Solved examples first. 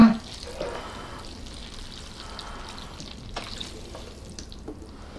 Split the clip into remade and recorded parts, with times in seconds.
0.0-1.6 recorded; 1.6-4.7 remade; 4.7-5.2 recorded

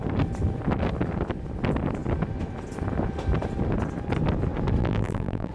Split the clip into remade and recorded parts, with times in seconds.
0.0-4.8 recorded; 4.8-5.5 remade